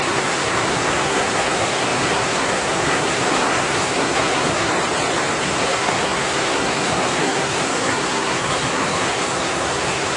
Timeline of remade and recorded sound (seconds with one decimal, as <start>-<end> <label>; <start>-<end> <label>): 0.0-4.7 remade; 4.7-5.4 recorded; 5.4-10.2 remade